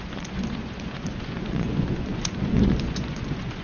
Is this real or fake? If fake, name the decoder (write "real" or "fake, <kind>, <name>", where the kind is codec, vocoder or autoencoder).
fake, vocoder, Vocos